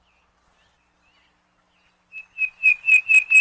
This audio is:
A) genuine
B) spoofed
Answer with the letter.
A